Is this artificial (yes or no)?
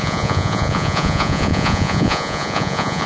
yes